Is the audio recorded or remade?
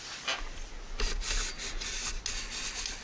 recorded